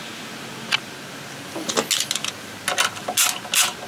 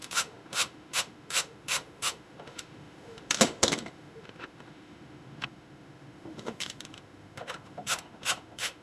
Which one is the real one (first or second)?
first